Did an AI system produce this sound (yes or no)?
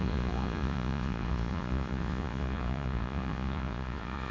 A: yes